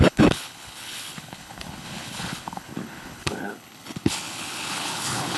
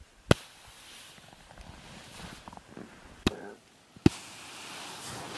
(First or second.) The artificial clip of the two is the first